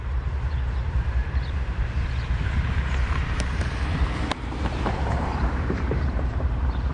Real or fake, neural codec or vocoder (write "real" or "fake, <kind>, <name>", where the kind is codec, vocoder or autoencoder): fake, vocoder, BigVGAN v2